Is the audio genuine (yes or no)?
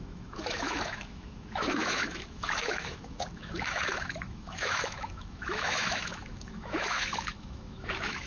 no